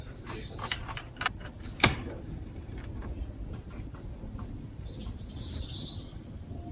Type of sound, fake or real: fake